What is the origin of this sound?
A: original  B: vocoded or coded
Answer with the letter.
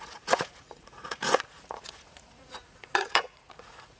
B